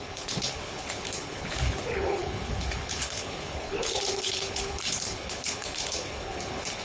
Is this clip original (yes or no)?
no